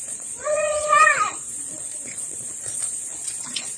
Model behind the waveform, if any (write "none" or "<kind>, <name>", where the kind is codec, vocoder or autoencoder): vocoder, Vocos